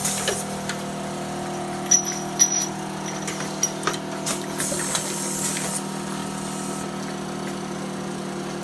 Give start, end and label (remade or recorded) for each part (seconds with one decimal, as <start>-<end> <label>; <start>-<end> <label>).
0.0-8.6 recorded